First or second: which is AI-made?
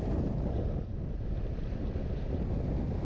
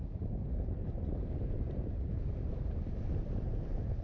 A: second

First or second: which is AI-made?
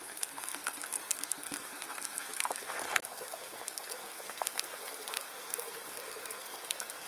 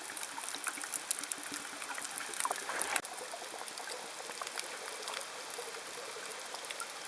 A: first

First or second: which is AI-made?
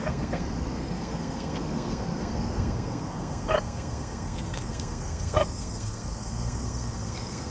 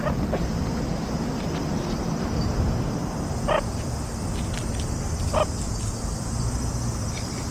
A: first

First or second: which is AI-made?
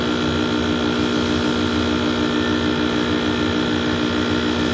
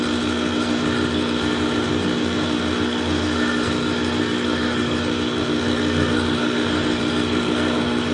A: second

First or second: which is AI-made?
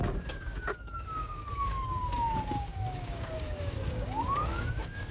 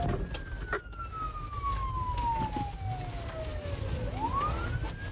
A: first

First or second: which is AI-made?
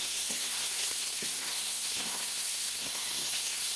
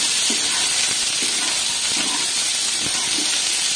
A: first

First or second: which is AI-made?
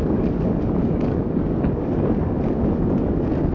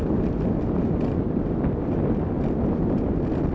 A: first